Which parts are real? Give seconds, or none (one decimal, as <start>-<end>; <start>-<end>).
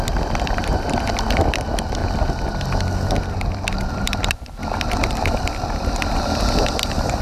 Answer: 0.0-0.6; 1.1-7.2